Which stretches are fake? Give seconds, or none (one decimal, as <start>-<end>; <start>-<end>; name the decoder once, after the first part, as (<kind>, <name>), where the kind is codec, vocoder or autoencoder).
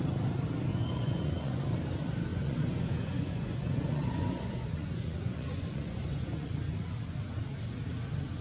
0.7-1.6 (vocoder, Vocos); 2.3-6.5